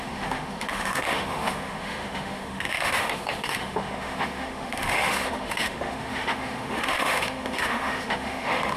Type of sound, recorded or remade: remade